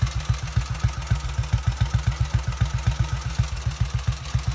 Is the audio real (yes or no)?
yes